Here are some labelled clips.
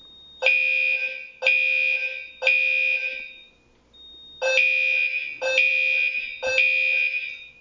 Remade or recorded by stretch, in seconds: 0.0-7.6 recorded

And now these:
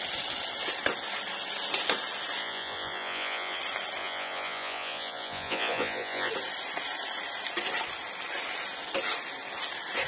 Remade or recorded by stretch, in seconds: 0.0-2.4 recorded; 2.4-3.6 remade; 3.6-4.0 recorded; 4.0-6.3 remade; 6.3-10.1 recorded

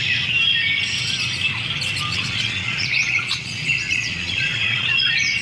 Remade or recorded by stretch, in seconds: 0.0-2.1 recorded; 2.1-5.4 remade

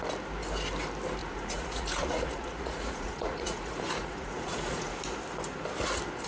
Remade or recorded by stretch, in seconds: 0.0-1.2 recorded; 1.2-5.0 remade; 5.0-6.3 recorded

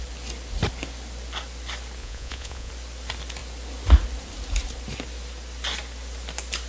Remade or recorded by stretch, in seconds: 0.0-2.0 recorded; 2.0-2.7 remade; 2.7-6.7 recorded